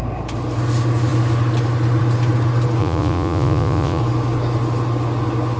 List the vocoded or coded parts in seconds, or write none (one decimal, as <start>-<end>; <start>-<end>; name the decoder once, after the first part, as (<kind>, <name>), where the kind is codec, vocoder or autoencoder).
2.8-4.0 (vocoder, Vocos)